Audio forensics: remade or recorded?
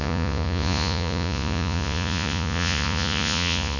remade